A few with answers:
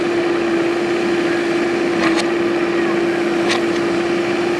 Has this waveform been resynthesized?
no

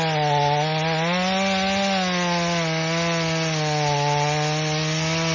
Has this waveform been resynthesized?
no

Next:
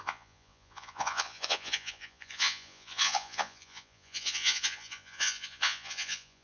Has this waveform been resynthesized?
yes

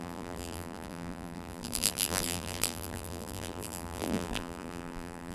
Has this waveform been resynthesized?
yes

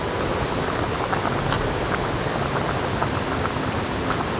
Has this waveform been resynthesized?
no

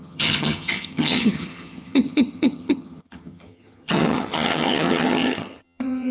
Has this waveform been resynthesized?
yes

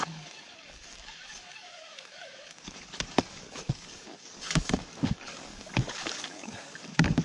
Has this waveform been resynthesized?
yes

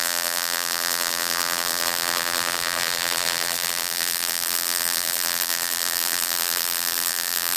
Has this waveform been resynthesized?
yes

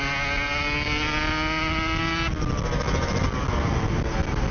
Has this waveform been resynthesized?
no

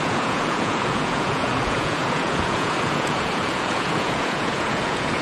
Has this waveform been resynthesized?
yes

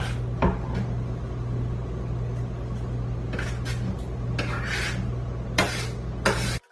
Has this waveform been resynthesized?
no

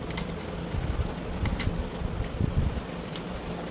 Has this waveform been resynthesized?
no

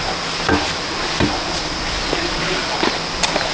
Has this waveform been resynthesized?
yes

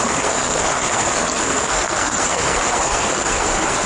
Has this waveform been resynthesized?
yes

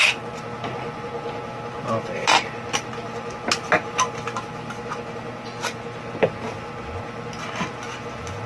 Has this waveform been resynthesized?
no